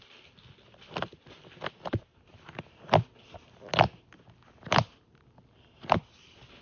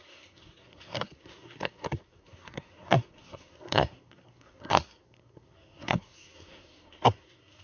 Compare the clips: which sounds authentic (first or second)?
first